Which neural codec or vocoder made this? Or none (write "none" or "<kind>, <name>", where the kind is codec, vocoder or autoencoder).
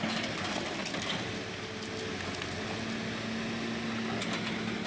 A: none